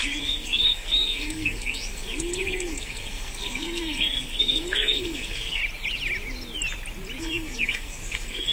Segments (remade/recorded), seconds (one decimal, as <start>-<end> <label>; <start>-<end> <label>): 0.0-5.6 remade; 5.6-7.2 recorded; 7.2-8.5 remade